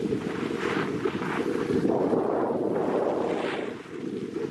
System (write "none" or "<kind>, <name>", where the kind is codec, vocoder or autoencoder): none